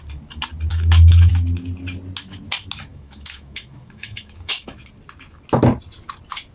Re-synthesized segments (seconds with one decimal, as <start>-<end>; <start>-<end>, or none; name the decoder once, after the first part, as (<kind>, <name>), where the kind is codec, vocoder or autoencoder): 0.7-1.3 (autoencoder, DAC-VAE); 2.9-4.8